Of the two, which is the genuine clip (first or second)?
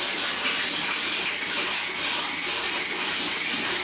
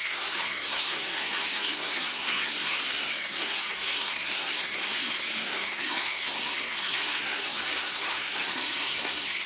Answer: first